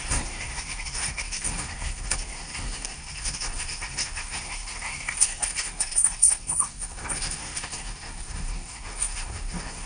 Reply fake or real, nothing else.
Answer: fake